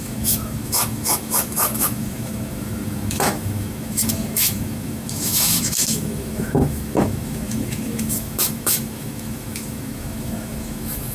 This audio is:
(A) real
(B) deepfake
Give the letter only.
B